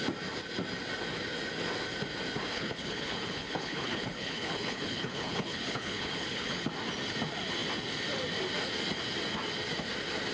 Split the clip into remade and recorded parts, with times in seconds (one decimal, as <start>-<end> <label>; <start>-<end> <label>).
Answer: 0.0-2.5 recorded; 2.5-6.7 remade; 6.7-10.3 recorded